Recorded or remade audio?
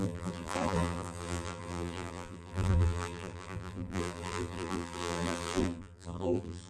remade